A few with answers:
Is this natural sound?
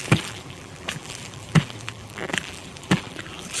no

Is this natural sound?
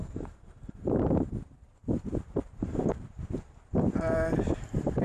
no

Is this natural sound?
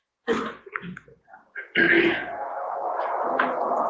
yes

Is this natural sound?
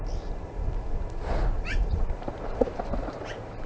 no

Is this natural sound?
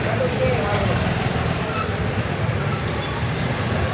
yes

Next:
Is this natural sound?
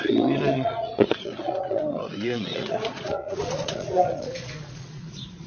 no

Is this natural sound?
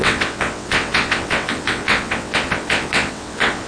no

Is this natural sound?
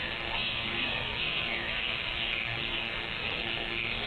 no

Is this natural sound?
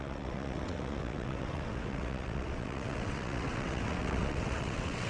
no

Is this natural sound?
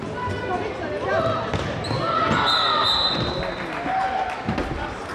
yes